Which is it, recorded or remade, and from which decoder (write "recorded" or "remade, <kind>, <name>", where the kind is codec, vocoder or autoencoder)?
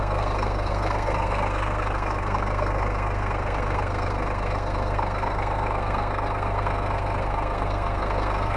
remade, codec, SNAC